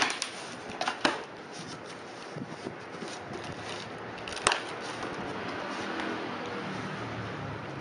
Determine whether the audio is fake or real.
real